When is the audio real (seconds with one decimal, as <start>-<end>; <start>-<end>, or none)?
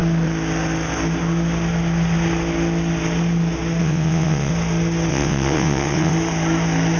0.0-3.8; 4.5-5.1; 6.1-7.0